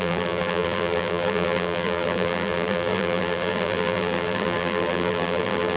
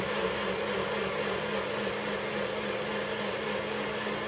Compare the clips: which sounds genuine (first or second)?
second